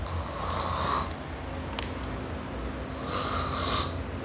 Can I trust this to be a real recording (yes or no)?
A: yes